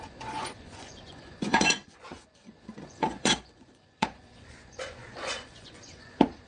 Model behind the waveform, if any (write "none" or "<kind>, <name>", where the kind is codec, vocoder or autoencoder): vocoder, Vocos